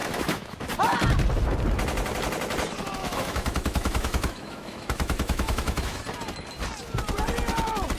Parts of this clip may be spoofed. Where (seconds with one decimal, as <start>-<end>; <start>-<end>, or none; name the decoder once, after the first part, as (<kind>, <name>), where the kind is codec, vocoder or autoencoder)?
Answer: 0.0-0.7 (autoencoder, DAC-VAE); 3.0-6.0

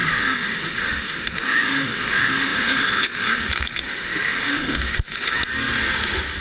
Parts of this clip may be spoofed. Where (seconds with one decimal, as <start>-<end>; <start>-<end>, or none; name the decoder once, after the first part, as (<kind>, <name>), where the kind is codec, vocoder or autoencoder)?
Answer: 0.0-5.4 (autoencoder, DAC-VAE)

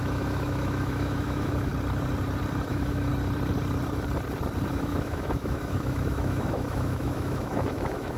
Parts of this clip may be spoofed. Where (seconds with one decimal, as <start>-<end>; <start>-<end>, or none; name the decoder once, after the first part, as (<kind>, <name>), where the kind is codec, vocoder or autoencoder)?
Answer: 0.0-1.7 (autoencoder, DAC-VAE); 2.7-3.1; 4.7-8.2

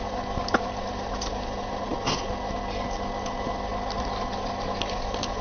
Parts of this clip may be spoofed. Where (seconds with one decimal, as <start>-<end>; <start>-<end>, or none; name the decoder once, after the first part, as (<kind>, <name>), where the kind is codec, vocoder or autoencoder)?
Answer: none

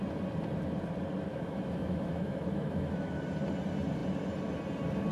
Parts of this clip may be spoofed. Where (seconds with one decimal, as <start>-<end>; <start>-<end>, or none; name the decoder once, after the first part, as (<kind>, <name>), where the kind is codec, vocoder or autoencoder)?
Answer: 1.3-3.2 (autoencoder, DAC-VAE)

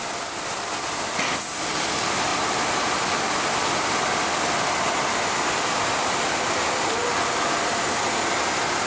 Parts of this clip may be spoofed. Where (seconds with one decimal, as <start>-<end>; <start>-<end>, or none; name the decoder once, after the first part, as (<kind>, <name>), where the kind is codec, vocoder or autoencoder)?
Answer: none

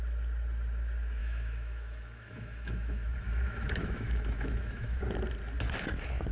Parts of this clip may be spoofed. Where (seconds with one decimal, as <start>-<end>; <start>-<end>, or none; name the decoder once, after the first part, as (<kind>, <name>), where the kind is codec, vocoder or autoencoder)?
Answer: 1.2-5.0 (autoencoder, DAC-VAE)

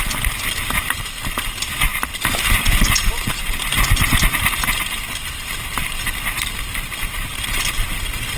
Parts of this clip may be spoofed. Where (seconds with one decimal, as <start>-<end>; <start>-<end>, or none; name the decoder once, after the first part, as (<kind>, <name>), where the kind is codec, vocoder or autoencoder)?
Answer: none